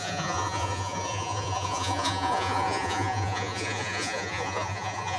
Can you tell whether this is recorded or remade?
remade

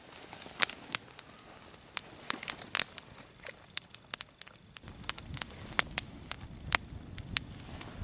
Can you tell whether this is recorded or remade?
recorded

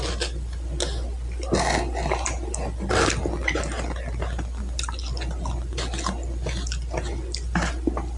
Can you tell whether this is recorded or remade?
recorded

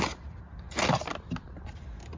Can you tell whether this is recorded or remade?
recorded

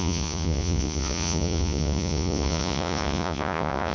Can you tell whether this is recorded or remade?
remade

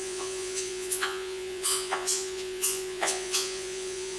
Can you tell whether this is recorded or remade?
remade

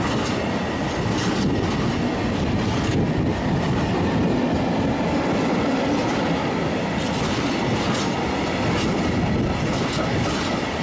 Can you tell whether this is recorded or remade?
recorded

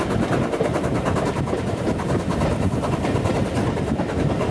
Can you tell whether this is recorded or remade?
recorded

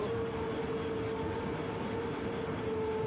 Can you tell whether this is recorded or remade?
recorded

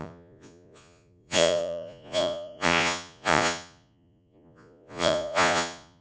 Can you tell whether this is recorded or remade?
remade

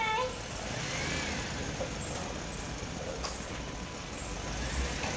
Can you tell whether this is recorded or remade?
recorded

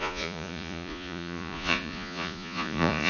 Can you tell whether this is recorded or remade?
remade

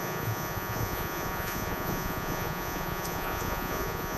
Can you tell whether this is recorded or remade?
remade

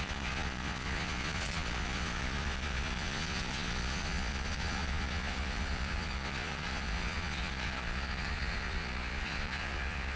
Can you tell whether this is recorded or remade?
remade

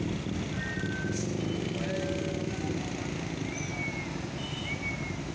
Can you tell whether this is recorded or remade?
recorded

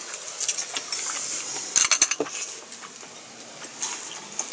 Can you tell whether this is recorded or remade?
recorded